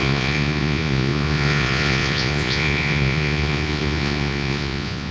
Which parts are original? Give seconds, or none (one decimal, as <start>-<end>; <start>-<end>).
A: none